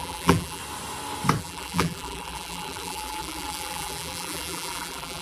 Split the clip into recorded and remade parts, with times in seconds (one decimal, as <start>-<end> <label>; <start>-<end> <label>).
0.0-0.6 remade; 0.6-1.4 recorded; 1.4-5.2 remade